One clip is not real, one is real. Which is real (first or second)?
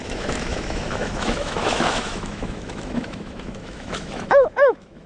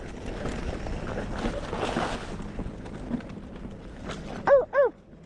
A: second